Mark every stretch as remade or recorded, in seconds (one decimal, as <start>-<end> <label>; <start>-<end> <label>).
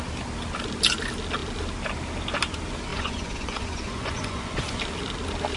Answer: 0.0-2.9 recorded; 2.9-4.8 remade; 4.8-5.6 recorded